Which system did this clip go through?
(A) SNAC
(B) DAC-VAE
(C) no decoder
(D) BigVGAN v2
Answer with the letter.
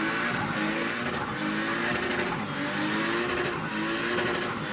C